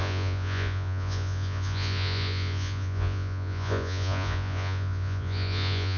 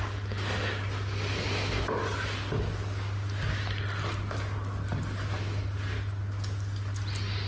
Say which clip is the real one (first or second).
second